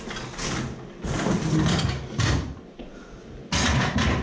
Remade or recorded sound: recorded